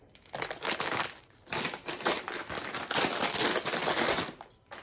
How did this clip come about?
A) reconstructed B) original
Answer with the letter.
B